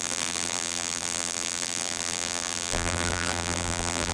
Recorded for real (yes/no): no